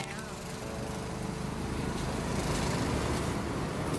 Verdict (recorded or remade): recorded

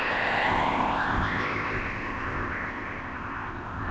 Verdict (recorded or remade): remade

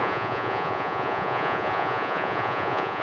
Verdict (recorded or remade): remade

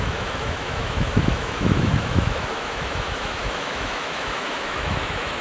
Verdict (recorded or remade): remade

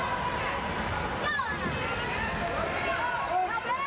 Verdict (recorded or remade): recorded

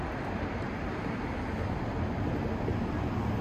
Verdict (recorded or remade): recorded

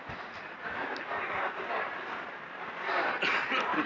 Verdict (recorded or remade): recorded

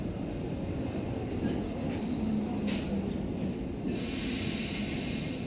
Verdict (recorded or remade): recorded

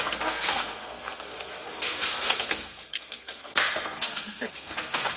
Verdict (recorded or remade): remade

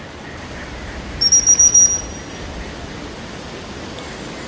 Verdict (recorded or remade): recorded